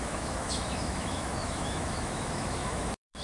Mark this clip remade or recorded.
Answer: remade